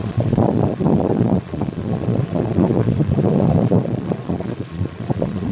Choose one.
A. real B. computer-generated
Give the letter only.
B